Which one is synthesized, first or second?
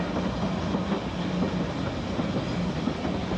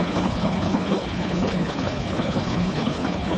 second